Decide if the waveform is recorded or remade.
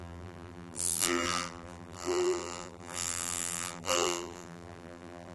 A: remade